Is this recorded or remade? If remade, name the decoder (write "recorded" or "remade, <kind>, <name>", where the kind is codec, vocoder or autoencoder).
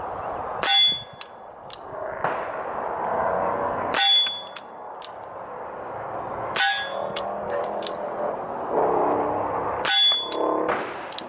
recorded